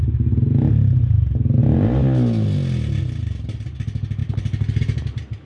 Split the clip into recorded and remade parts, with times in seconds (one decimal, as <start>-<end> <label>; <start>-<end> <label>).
0.0-4.2 recorded; 4.2-4.8 remade; 4.8-5.5 recorded